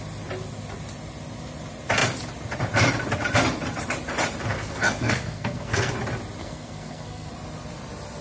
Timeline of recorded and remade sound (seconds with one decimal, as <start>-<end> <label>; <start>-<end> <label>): 0.0-4.5 recorded; 4.5-5.9 remade; 5.9-6.4 recorded; 6.4-7.3 remade; 7.3-8.2 recorded